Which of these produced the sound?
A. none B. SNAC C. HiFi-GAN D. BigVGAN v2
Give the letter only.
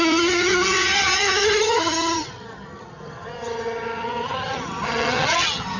C